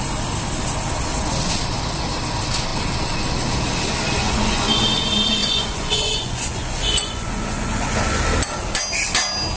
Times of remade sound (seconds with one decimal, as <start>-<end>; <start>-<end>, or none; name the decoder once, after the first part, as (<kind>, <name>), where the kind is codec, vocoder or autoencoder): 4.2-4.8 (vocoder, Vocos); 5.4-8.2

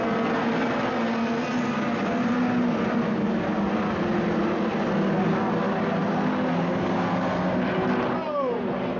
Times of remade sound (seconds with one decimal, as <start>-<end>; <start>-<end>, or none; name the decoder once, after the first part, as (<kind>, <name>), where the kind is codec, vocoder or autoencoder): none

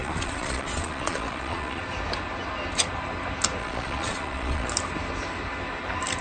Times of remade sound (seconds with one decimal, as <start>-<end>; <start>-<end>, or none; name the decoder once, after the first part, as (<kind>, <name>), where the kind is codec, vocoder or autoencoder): 0.0-1.8 (vocoder, Vocos); 3.6-4.7

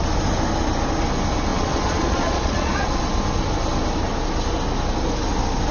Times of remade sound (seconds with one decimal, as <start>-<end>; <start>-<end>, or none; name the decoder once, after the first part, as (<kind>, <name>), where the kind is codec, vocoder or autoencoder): 1.5-3.0 (vocoder, Vocos)

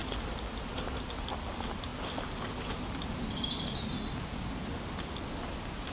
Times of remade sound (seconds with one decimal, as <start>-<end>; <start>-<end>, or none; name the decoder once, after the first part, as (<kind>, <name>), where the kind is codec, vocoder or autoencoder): none